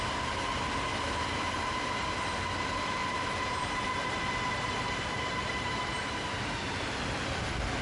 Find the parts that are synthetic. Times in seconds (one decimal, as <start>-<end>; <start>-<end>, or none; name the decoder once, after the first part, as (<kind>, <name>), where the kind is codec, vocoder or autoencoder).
3.0-6.3 (vocoder, BigVGAN v2)

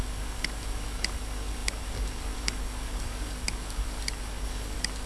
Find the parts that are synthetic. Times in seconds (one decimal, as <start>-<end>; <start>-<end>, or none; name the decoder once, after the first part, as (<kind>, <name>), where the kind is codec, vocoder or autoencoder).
0.0-5.1 (codec, DAC)

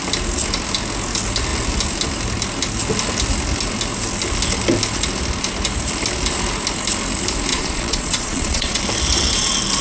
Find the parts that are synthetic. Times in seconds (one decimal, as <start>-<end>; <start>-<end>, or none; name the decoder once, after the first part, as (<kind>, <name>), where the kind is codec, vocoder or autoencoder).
7.5-8.8 (vocoder, Vocos)

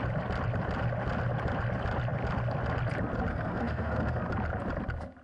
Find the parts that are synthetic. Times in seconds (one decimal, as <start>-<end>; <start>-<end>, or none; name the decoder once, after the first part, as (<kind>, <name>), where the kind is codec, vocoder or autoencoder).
3.3-4.2 (codec, SNAC)

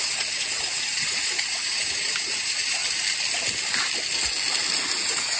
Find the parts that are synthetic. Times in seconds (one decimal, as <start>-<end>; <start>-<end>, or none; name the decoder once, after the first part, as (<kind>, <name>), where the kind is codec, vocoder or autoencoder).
0.0-2.8 (vocoder, Vocos); 5.0-5.4

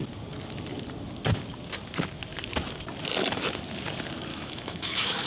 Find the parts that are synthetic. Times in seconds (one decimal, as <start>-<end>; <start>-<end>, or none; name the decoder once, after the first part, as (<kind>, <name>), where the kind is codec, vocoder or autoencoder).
4.3-5.3 (autoencoder, DAC-VAE)

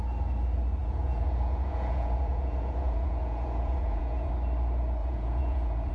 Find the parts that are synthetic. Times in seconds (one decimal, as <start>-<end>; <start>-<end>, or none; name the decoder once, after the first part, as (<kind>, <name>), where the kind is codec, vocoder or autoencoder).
0.8-4.3 (vocoder, Vocos); 5.0-5.9